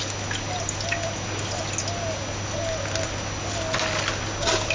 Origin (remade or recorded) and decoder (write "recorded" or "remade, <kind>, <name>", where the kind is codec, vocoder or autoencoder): recorded